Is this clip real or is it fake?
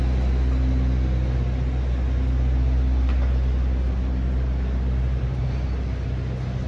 real